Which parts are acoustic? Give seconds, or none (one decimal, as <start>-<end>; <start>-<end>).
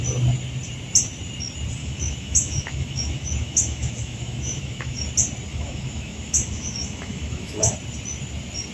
0.0-1.8; 5.0-5.5; 7.7-8.7